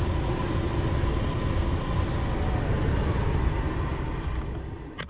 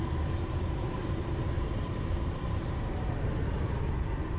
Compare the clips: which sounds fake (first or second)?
second